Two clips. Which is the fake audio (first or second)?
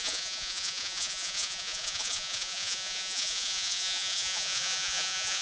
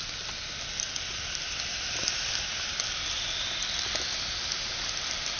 first